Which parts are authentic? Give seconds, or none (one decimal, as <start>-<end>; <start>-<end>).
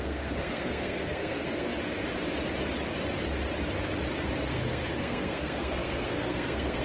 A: 1.7-4.4